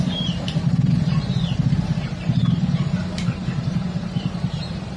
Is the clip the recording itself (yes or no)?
no